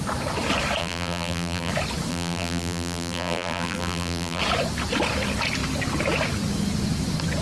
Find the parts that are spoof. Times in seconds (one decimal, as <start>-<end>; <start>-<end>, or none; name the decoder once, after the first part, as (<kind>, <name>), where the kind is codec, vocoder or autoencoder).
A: 0.8-1.7 (vocoder, BigVGAN v2); 2.1-4.4